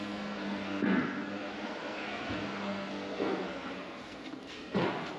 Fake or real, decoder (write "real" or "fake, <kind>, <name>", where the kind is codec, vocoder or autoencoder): fake, codec, SNAC